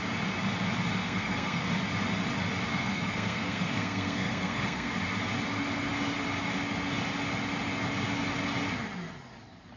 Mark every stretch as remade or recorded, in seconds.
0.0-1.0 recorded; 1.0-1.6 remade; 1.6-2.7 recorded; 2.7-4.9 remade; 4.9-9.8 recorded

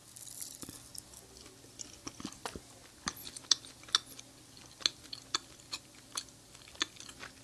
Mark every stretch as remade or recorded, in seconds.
0.0-7.4 recorded

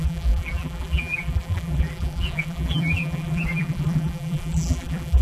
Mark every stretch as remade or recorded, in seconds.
0.0-5.2 remade

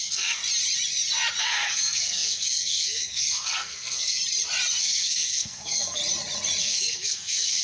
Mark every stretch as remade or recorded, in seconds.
0.0-0.4 remade; 0.4-1.4 recorded; 1.4-4.2 remade; 4.2-4.8 recorded; 4.8-6.0 remade; 6.0-6.6 recorded; 6.6-7.6 remade

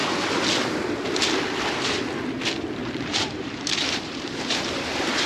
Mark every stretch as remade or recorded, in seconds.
0.0-2.8 recorded; 2.8-5.3 remade

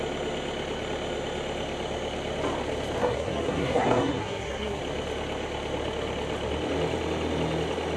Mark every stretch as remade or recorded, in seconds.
0.0-3.0 recorded; 3.0-4.8 remade; 4.8-8.0 recorded